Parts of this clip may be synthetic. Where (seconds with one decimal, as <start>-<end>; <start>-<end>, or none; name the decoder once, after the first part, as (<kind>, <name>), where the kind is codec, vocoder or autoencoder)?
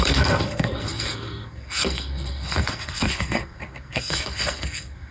0.0-5.1 (codec, SNAC)